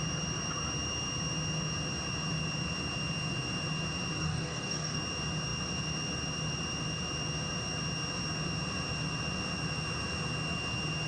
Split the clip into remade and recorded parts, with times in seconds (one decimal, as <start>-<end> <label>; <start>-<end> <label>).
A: 0.0-4.2 recorded; 4.2-5.0 remade; 5.0-11.1 recorded